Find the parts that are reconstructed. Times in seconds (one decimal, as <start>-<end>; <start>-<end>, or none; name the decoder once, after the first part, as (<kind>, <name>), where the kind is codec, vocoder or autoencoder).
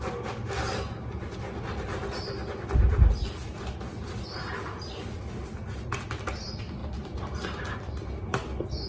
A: none